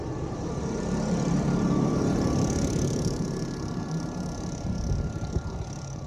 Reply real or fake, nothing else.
fake